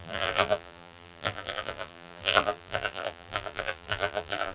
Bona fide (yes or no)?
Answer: no